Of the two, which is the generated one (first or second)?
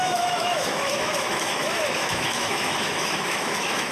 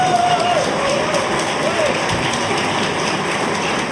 first